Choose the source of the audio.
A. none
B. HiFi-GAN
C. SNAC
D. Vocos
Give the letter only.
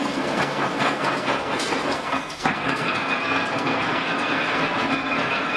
C